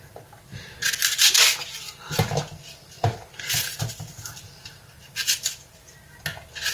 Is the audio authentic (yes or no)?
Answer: yes